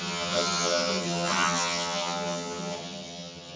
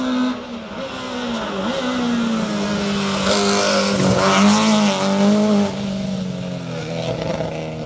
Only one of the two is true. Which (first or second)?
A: second